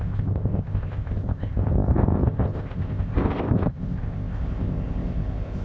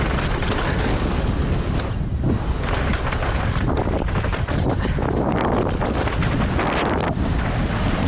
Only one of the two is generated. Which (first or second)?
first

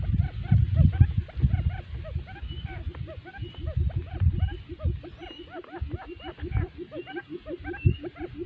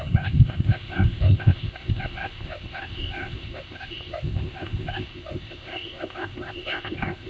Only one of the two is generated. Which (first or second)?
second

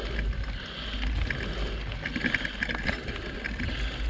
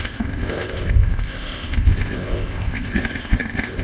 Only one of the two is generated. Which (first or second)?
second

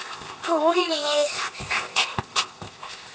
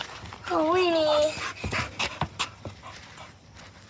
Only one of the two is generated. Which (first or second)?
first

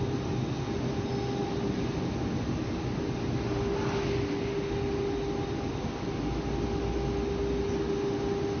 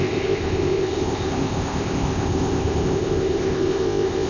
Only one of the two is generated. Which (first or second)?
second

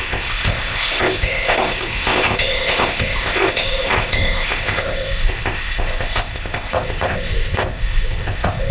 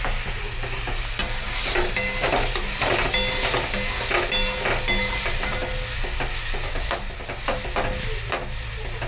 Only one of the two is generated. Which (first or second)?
first